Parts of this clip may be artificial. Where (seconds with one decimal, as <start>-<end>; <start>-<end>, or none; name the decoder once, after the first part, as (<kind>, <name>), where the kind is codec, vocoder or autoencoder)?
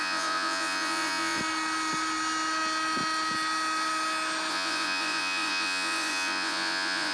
0.0-1.4 (vocoder, Vocos); 4.5-7.1